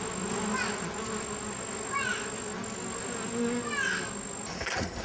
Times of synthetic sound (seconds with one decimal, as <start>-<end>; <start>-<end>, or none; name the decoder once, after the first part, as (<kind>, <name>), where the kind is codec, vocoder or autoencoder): none